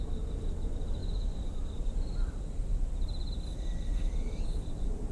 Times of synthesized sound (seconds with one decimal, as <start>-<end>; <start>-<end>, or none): 1.0-4.1